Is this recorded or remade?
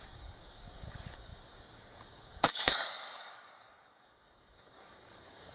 remade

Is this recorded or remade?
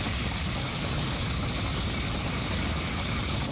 remade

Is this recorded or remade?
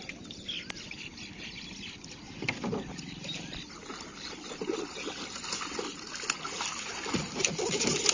recorded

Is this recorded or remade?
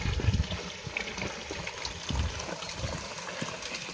recorded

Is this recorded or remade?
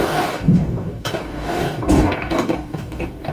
remade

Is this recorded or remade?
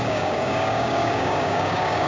remade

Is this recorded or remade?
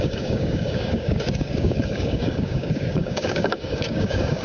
remade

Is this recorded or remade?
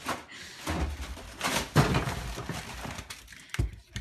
recorded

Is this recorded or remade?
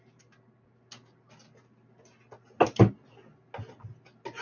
recorded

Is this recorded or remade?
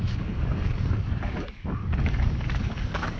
remade